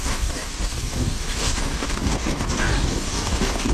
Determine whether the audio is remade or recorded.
remade